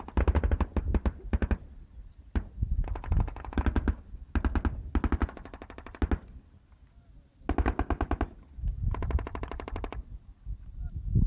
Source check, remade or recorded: recorded